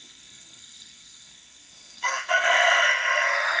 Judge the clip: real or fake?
fake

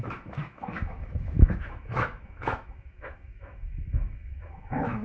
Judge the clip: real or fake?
fake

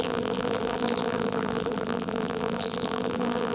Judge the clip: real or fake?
fake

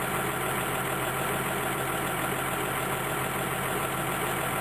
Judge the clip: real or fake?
real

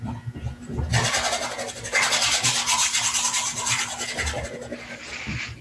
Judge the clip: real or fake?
real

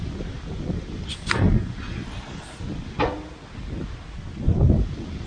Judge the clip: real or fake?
real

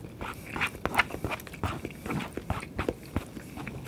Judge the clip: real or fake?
real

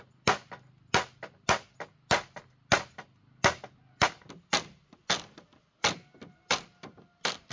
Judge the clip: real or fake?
real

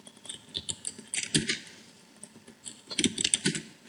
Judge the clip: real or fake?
real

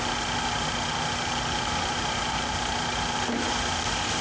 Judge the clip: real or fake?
real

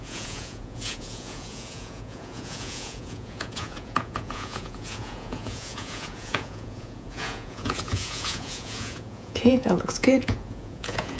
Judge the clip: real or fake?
fake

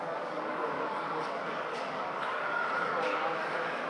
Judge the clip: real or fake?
fake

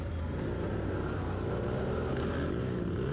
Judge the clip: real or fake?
real